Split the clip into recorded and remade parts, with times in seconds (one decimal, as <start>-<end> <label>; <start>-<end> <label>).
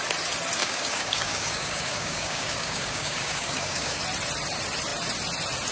0.0-0.6 recorded; 0.6-4.0 remade; 4.0-5.7 recorded